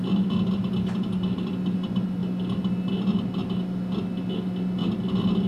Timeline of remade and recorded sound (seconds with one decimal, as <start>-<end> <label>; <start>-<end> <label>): 0.0-5.5 recorded